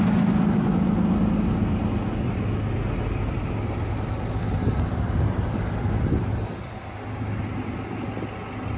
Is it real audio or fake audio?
real